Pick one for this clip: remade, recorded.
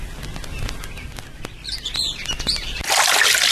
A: recorded